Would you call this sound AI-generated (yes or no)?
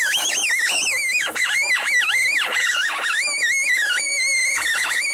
yes